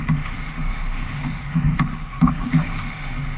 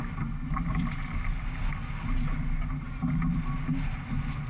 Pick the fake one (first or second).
first